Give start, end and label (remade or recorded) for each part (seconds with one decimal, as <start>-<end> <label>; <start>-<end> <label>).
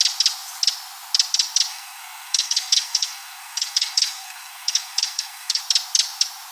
0.0-1.7 recorded; 1.7-5.6 remade; 5.6-6.5 recorded